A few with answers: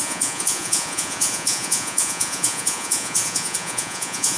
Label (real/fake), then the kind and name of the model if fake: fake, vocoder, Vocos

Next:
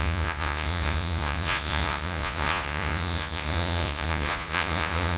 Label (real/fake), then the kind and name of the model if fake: fake, vocoder, Vocos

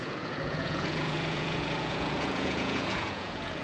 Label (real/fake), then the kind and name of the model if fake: fake, vocoder, Vocos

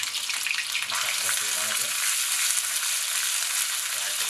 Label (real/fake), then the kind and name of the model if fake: real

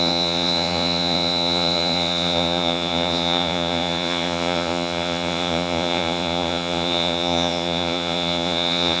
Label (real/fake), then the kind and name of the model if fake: fake, vocoder, Vocos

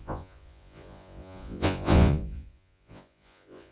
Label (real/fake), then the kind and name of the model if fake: fake, vocoder, Vocos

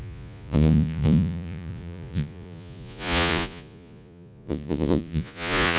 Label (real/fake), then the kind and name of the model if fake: fake, vocoder, Vocos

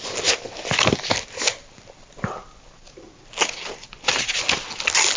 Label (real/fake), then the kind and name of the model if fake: real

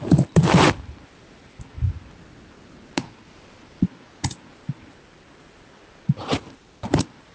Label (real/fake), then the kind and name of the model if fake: real